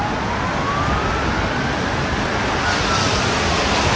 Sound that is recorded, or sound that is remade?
recorded